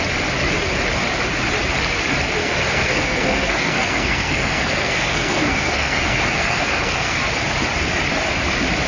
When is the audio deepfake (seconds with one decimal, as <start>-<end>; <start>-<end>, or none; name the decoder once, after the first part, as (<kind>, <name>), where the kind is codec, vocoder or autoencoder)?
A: 2.4-7.2 (codec, SNAC)